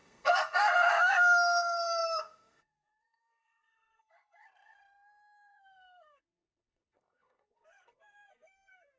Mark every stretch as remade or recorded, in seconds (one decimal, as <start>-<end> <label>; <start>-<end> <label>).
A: 0.0-9.0 remade